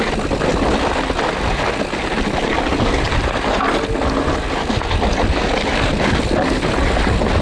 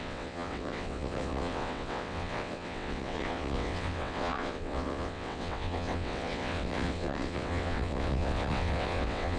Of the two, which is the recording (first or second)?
first